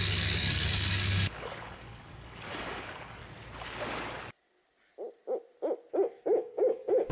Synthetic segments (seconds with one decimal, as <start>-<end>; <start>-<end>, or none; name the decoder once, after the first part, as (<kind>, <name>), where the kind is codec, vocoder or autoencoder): 0.0-3.2 (codec, DAC); 5.9-7.1